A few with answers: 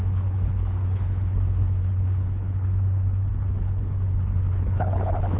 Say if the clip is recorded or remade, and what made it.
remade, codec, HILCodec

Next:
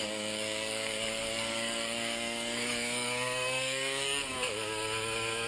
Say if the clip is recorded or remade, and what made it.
remade, codec, DAC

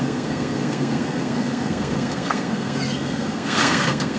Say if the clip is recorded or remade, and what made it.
remade, codec, SNAC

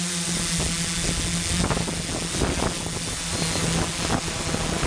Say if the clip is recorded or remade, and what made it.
recorded